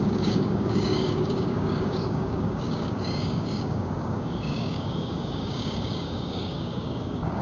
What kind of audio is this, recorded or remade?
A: remade